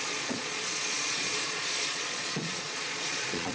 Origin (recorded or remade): remade